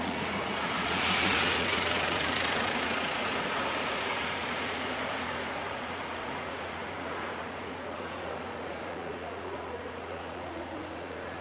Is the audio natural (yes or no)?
no